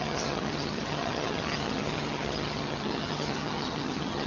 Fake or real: fake